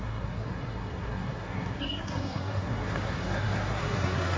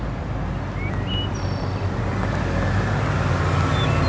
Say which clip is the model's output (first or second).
first